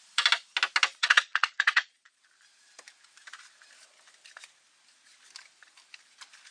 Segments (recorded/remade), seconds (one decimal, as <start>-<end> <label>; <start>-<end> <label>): 0.0-0.9 recorded; 0.9-2.2 remade; 2.2-6.5 recorded